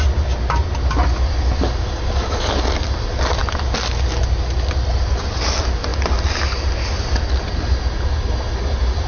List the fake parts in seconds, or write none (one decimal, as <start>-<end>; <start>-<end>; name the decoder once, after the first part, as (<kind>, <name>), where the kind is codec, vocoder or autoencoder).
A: none